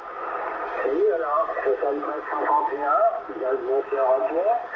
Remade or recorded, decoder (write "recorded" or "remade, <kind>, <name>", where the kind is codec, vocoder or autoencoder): recorded